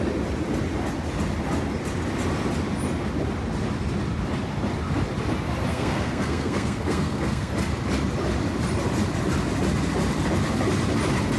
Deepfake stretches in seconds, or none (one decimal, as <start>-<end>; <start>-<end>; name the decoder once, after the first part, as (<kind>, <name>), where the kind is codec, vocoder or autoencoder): 5.7-7.5 (codec, SNAC)